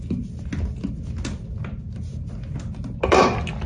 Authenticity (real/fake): real